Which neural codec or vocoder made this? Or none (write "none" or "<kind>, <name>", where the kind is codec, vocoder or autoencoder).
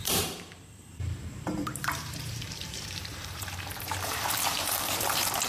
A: vocoder, BigVGAN v2